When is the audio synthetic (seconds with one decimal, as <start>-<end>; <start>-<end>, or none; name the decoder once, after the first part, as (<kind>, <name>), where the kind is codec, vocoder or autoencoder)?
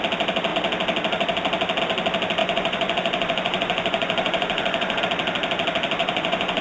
2.4-5.0 (vocoder, Vocos); 6.0-6.6